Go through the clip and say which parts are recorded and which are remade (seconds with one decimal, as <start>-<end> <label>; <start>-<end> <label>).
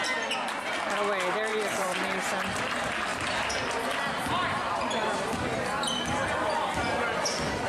0.0-1.5 recorded; 1.5-2.3 remade; 2.3-7.7 recorded